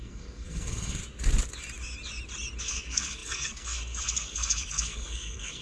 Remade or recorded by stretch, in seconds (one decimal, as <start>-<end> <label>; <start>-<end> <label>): 0.0-1.0 remade; 1.0-2.6 recorded; 2.6-5.6 remade